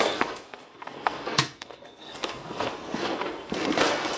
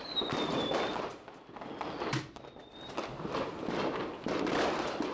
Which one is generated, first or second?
first